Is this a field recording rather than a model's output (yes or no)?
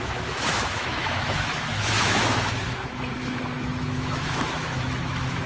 no